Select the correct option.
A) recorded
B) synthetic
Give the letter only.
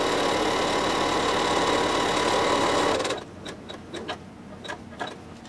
A